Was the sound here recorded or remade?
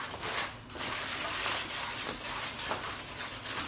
recorded